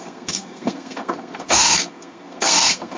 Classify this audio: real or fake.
fake